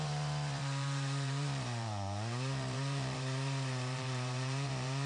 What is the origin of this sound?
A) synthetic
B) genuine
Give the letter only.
A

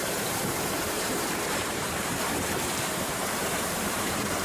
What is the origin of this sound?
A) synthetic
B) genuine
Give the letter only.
A